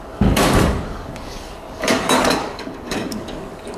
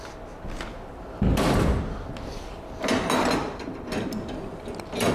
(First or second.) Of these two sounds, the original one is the second